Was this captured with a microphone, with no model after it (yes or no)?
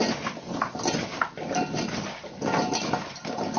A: yes